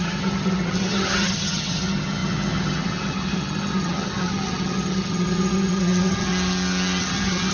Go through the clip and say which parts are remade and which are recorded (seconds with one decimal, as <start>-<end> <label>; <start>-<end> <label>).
0.0-6.3 remade; 6.3-7.0 recorded; 7.0-7.5 remade